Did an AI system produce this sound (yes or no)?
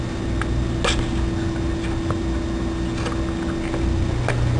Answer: no